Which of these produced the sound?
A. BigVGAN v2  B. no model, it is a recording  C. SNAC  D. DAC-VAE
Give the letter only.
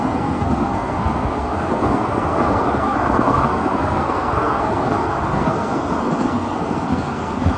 C